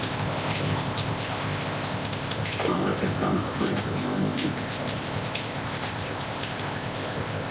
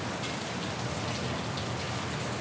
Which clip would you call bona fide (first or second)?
second